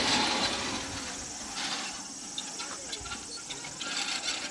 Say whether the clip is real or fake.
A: real